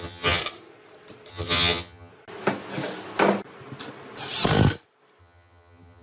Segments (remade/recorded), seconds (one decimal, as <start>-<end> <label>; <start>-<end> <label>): 0.0-0.4 remade; 0.4-1.3 recorded; 1.3-2.1 remade; 2.1-5.2 recorded; 5.2-6.0 remade